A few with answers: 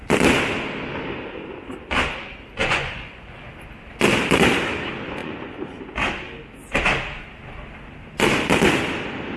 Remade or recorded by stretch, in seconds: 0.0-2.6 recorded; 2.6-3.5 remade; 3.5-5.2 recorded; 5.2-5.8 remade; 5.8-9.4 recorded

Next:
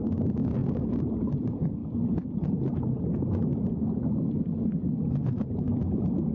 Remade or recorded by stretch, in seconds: 0.0-6.3 recorded

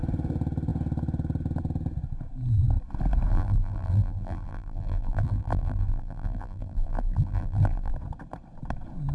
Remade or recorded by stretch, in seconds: 0.0-3.3 recorded; 3.3-7.9 remade; 7.9-9.1 recorded

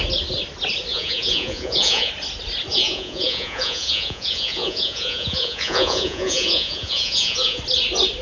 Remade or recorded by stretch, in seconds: 0.0-0.9 recorded; 0.9-2.1 remade; 2.1-2.7 recorded; 2.7-7.6 remade; 7.6-8.2 recorded

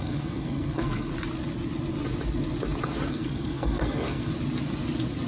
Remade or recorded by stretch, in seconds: 0.0-1.1 remade; 1.1-3.1 recorded; 3.1-4.3 remade; 4.3-5.3 recorded

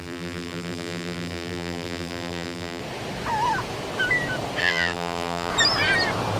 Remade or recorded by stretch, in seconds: 0.0-2.8 remade; 2.8-4.6 recorded; 4.6-5.5 remade; 5.5-6.4 recorded

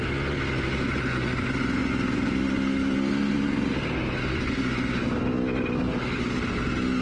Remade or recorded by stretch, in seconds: 0.0-7.0 recorded

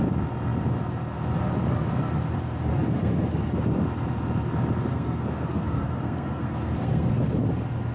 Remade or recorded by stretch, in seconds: 0.0-2.7 recorded; 2.7-3.5 remade; 3.5-4.9 recorded; 4.9-7.4 remade; 7.4-7.9 recorded